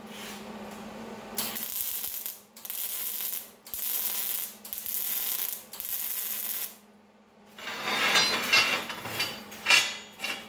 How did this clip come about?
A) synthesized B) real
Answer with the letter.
B